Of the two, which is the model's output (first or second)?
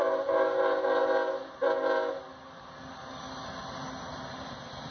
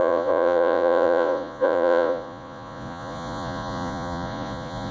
second